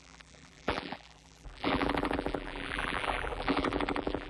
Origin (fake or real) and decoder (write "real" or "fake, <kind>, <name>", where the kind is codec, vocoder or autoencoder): fake, vocoder, BigVGAN v2